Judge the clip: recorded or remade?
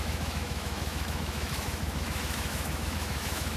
remade